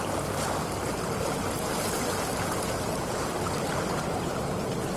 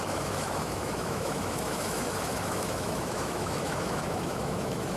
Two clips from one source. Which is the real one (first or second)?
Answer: first